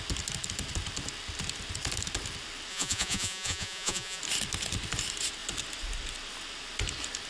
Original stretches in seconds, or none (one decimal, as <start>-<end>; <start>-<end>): 0.0-2.7; 4.2-7.3